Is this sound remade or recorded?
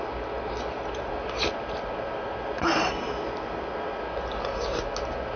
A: recorded